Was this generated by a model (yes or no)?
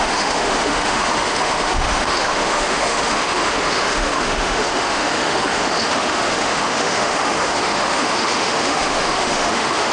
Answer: yes